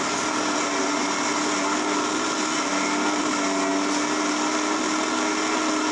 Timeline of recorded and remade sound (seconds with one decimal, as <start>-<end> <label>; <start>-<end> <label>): 0.0-5.9 recorded